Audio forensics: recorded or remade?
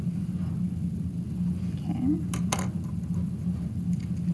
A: recorded